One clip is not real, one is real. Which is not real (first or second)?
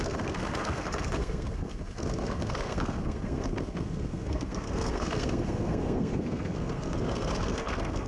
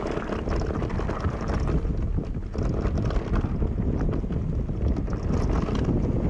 first